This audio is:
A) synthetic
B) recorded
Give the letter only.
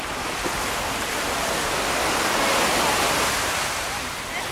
B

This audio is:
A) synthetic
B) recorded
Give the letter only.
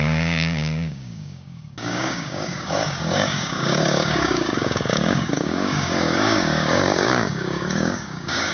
A